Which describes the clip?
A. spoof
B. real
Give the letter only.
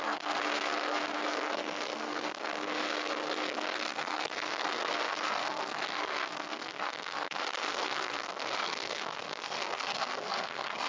A